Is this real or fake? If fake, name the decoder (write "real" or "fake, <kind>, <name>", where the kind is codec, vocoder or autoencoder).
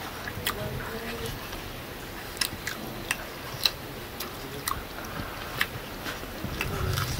real